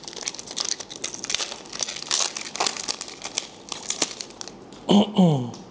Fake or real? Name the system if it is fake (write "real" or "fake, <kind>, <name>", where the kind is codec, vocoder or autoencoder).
real